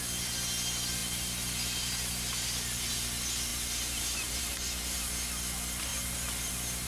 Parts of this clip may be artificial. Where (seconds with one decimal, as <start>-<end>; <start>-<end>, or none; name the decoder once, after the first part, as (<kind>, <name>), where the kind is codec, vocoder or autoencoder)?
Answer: none